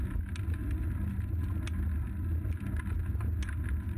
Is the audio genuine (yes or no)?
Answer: yes